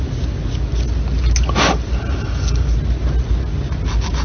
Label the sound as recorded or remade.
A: recorded